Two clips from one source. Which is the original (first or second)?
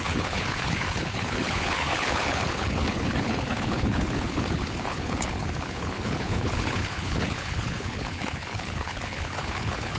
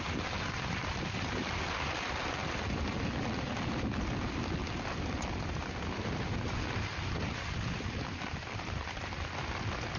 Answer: second